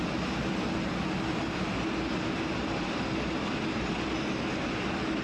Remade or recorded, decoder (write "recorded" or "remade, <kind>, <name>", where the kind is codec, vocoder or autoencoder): recorded